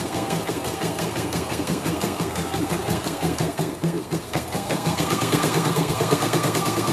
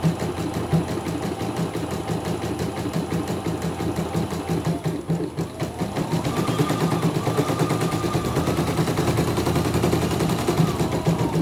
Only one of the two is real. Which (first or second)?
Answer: second